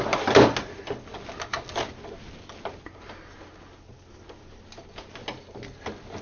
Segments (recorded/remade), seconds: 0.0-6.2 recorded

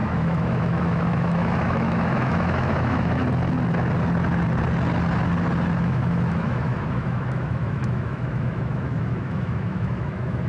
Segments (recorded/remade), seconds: 0.0-3.2 remade; 3.2-5.8 recorded; 5.8-10.5 remade

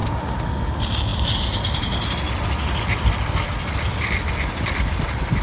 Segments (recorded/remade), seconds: 0.0-0.7 remade; 0.7-5.4 recorded

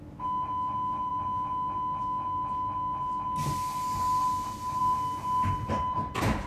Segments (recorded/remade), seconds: 0.0-6.5 recorded

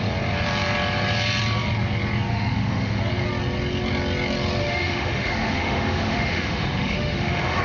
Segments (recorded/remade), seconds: 0.0-2.3 recorded; 2.3-3.0 remade; 3.0-4.6 recorded; 4.6-7.6 remade